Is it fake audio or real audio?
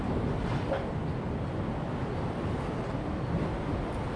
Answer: real